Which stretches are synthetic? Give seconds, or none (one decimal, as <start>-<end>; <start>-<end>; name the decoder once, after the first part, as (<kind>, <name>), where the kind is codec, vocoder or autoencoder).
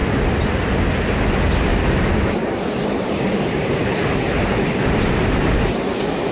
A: 1.7-4.2 (vocoder, BigVGAN v2)